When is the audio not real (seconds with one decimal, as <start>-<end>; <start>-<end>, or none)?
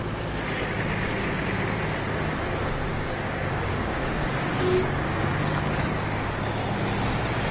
2.9-5.3